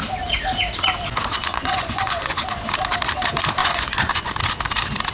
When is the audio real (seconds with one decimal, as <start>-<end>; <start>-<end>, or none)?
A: 0.0-1.4; 2.4-3.6; 4.3-5.1